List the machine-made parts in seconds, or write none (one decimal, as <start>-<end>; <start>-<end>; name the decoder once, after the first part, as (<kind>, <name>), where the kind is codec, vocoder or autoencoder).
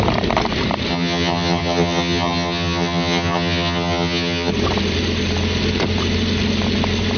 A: 0.9-4.5 (vocoder, HiFi-GAN)